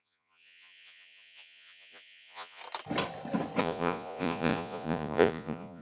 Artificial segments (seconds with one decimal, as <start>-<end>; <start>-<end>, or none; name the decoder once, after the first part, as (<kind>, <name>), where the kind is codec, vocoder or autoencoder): 0.0-2.6 (vocoder, Vocos); 3.6-5.8